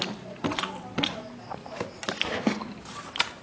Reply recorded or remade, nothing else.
recorded